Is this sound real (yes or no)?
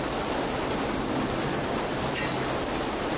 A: yes